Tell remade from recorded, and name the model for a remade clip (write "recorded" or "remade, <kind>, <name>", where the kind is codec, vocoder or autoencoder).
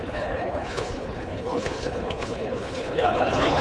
remade, codec, HILCodec